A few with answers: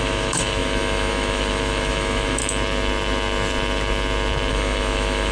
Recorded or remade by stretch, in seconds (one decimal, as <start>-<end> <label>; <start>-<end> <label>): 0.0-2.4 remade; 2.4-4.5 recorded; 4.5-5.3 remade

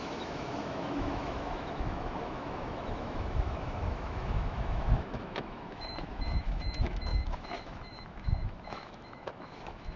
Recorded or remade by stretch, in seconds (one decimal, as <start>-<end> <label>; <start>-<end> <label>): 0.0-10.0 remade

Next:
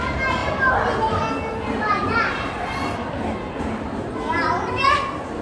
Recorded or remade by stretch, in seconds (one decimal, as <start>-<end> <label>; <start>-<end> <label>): 0.0-5.4 recorded

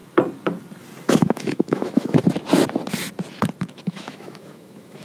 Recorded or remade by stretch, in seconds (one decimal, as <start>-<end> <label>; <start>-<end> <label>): 0.0-1.1 recorded; 1.1-2.2 remade; 2.2-3.6 recorded; 3.6-5.0 remade

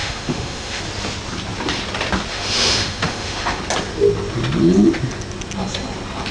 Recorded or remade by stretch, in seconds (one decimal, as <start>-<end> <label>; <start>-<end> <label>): 0.0-0.8 remade; 0.8-2.3 recorded; 2.3-3.6 remade; 3.6-6.3 recorded

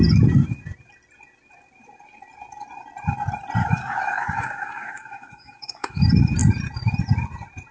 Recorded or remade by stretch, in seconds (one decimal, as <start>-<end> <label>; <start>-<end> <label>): 0.0-3.6 recorded; 3.6-6.0 remade; 6.0-7.7 recorded

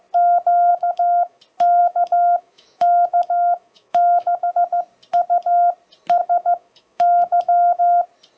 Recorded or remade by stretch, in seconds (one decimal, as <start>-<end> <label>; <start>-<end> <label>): 0.0-0.7 recorded; 0.7-1.4 remade; 1.4-1.8 recorded; 1.8-4.5 remade; 4.5-6.2 recorded; 6.2-7.8 remade; 7.8-8.4 recorded

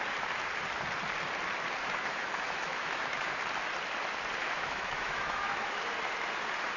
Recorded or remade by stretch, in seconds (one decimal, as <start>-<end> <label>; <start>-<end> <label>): 0.0-1.8 recorded; 1.8-3.3 remade; 3.3-4.4 recorded; 4.4-5.9 remade; 5.9-6.8 recorded